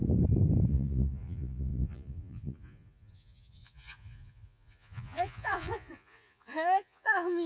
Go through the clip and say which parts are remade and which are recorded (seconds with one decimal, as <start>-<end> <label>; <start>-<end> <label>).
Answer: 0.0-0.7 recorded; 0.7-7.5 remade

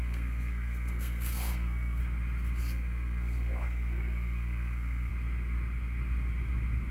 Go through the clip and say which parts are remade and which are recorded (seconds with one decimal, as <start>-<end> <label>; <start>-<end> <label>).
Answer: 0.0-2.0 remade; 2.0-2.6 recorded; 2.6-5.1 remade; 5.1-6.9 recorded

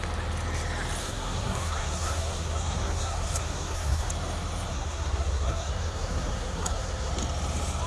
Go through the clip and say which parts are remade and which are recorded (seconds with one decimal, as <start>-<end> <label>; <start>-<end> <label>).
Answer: 0.0-1.0 recorded; 1.0-4.1 remade; 4.1-4.7 recorded; 4.7-7.1 remade; 7.1-7.9 recorded

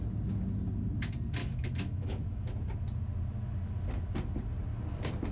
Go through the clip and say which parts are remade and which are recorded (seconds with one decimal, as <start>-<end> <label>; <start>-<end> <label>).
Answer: 0.0-1.4 recorded; 1.4-2.5 remade; 2.5-5.3 recorded

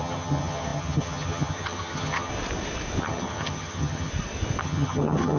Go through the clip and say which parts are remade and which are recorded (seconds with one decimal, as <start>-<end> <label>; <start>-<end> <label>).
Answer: 0.0-2.3 remade; 2.3-3.0 recorded; 3.0-4.1 remade; 4.1-4.6 recorded; 4.6-5.4 remade

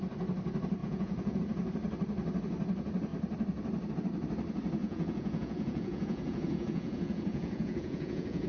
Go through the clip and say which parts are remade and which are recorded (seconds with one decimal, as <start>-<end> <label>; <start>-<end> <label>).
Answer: 0.0-0.8 recorded; 0.8-1.4 remade; 1.4-4.8 recorded; 4.8-8.5 remade

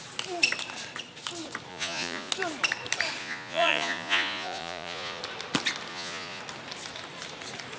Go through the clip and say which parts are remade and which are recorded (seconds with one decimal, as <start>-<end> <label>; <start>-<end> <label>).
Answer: 0.0-1.7 recorded; 1.7-2.3 remade; 2.3-3.2 recorded; 3.2-5.2 remade; 5.2-5.9 recorded; 5.9-6.4 remade; 6.4-7.8 recorded